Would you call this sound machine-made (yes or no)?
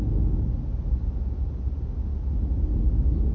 no